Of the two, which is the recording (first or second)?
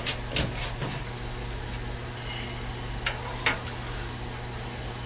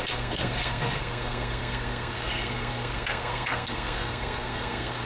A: first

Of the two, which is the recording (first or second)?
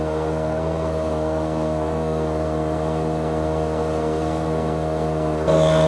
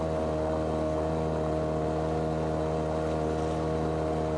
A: second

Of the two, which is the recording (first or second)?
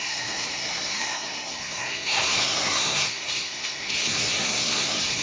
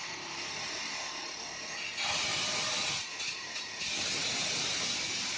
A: second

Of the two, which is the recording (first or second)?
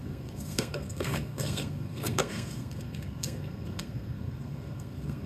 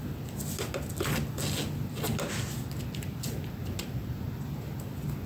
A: second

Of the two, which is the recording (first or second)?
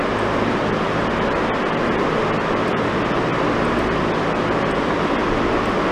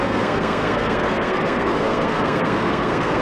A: first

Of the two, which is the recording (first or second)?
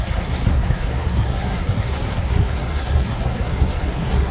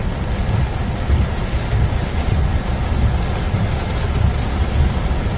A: second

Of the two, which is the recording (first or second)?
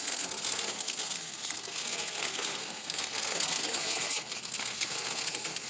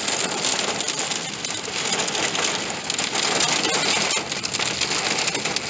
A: second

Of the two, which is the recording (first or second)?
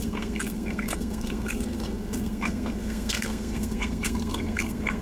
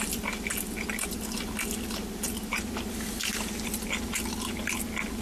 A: second